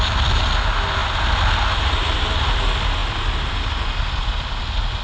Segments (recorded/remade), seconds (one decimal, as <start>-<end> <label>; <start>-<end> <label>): 0.0-5.0 recorded